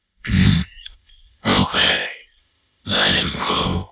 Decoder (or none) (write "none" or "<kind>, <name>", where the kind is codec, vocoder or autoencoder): codec, ZipCodec